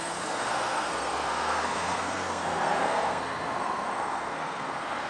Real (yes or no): no